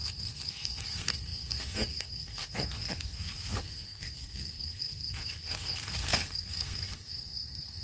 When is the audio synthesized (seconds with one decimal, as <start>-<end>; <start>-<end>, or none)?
0.0-7.8